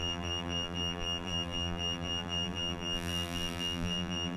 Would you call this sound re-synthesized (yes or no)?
yes